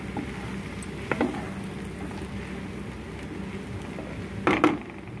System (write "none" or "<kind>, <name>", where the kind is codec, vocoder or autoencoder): none